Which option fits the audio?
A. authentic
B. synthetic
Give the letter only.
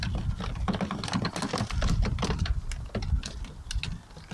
A